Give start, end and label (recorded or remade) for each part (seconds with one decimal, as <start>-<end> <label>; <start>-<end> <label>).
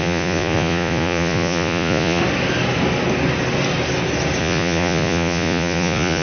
0.0-2.2 remade; 2.2-4.4 recorded; 4.4-6.2 remade